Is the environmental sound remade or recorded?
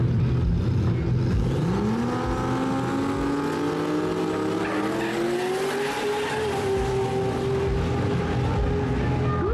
recorded